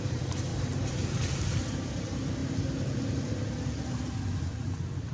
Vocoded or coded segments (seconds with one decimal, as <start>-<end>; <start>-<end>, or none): 0.0-2.4